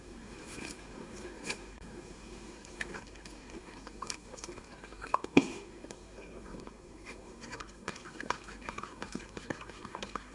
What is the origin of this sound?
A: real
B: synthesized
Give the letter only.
B